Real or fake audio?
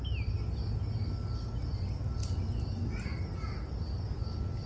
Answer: real